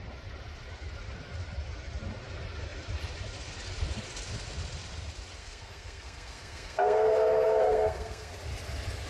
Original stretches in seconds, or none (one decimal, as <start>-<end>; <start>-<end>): 0.0-5.4; 8.3-9.1